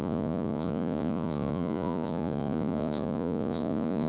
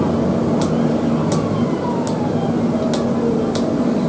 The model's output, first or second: first